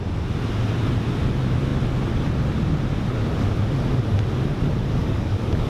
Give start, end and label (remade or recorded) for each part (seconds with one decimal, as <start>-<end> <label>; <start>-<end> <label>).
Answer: 0.0-5.0 recorded; 5.0-5.7 remade